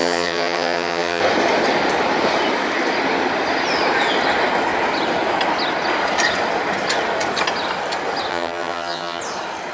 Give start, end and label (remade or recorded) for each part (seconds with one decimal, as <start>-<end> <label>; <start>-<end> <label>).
0.0-1.2 remade; 1.2-8.3 recorded; 8.3-9.2 remade; 9.2-9.7 recorded